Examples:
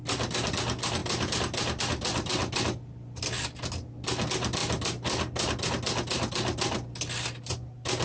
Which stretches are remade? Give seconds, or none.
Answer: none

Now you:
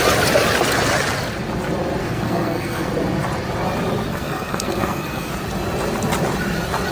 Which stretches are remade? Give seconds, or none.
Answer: 2.0-2.9; 4.1-5.3

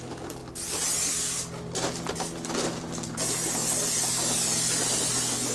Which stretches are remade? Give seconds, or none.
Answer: none

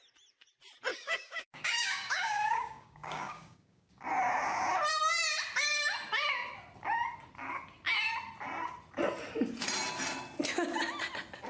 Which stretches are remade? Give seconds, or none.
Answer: 0.9-4.0

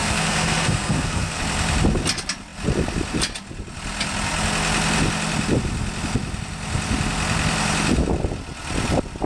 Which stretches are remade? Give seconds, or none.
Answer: 0.0-1.4

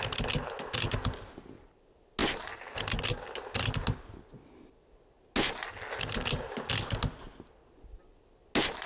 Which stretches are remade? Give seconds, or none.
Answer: none

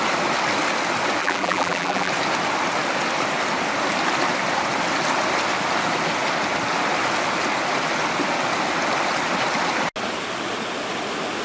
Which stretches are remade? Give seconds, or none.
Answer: 1.2-2.1

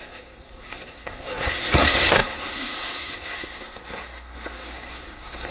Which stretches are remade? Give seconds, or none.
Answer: 0.0-5.5